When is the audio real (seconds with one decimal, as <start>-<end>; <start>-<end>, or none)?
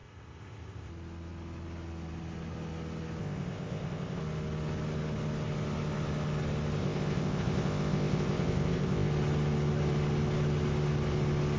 0.9-3.2; 4.2-6.8; 9.1-11.6